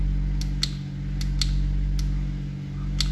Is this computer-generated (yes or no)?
no